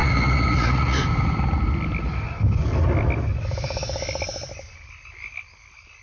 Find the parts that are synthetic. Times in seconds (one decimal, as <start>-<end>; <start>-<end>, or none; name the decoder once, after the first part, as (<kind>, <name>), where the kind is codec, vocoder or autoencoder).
0.0-1.0 (vocoder, Vocos)